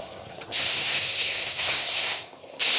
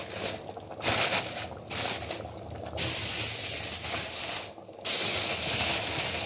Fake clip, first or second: first